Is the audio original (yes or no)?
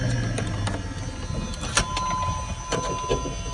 yes